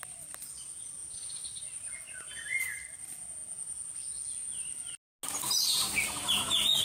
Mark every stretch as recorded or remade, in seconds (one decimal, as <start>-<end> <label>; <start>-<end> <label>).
0.0-1.0 recorded; 1.0-1.9 remade; 1.9-6.8 recorded